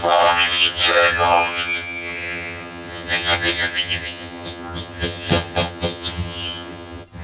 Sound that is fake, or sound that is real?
fake